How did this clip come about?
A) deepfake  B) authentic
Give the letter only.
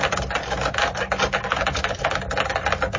B